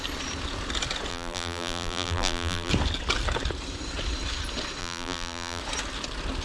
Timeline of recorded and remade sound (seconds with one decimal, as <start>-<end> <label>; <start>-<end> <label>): 0.0-1.1 recorded; 1.1-2.7 remade; 2.7-4.8 recorded; 4.8-5.6 remade; 5.6-6.4 recorded